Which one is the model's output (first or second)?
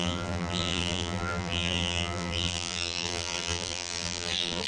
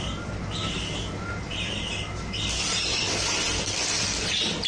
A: first